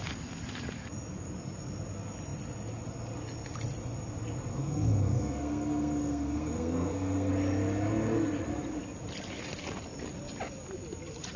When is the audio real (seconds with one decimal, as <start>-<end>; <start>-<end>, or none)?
0.0-4.5; 7.3-11.4